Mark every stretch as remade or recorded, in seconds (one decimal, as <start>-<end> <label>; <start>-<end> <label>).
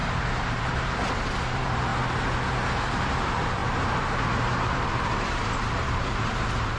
0.0-1.9 remade; 1.9-2.5 recorded; 2.5-6.8 remade